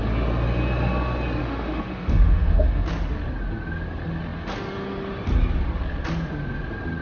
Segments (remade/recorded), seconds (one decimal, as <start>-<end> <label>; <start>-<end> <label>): 0.0-1.4 recorded; 1.4-2.8 remade; 2.8-7.0 recorded